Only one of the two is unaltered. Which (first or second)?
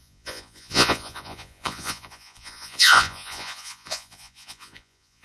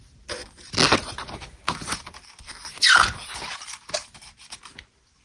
second